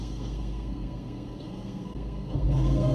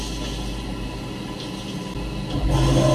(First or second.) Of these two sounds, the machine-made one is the first